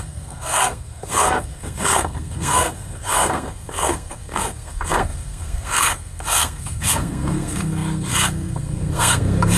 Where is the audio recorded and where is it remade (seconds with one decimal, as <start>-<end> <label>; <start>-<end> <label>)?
0.0-9.6 remade